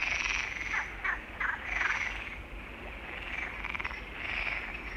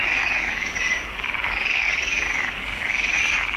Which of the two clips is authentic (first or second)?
first